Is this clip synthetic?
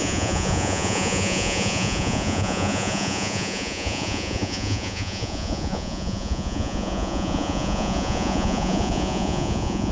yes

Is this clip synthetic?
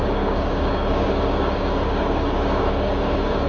yes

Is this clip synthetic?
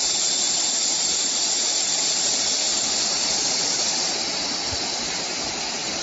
yes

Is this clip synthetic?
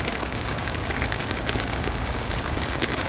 yes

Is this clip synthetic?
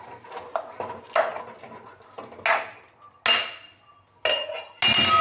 no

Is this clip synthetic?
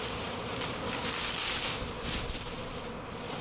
yes